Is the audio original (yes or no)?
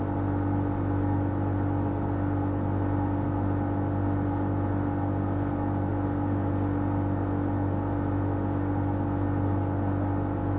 yes